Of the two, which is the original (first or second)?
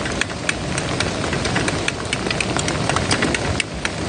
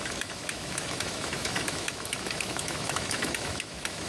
first